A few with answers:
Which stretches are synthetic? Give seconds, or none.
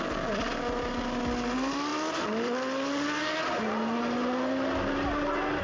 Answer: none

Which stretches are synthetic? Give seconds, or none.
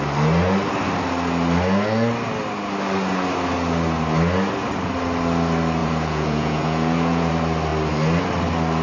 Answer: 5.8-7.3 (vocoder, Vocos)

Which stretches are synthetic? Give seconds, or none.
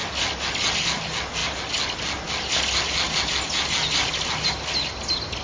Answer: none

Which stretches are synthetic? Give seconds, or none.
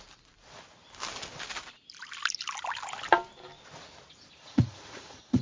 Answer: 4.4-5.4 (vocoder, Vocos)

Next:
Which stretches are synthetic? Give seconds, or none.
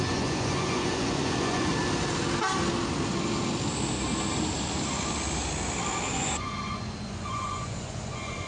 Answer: 0.0-1.7 (vocoder, Vocos); 6.1-8.5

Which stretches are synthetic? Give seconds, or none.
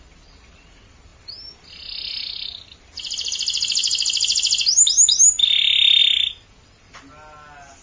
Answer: none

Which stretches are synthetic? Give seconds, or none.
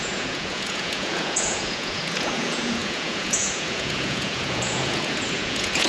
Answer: 0.0-5.9 (vocoder, Vocos)